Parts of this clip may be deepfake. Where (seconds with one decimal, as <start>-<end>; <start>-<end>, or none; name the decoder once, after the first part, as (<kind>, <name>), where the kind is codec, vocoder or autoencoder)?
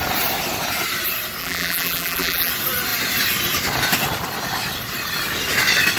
1.4-2.5 (vocoder, BigVGAN v2)